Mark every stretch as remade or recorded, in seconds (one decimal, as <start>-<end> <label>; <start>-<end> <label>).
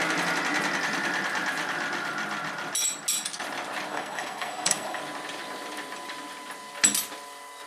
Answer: 0.0-3.9 recorded; 3.9-5.0 remade; 5.0-7.7 recorded